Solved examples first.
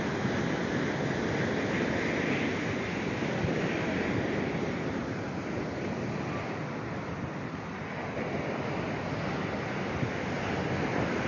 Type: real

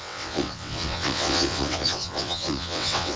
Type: fake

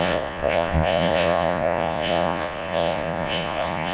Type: fake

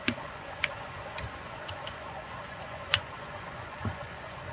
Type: fake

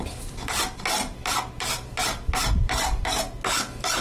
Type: real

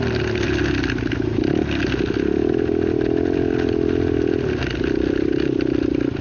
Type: real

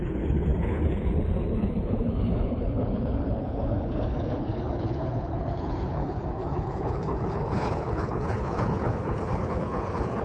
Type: fake